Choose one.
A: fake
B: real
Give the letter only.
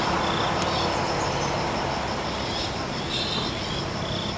B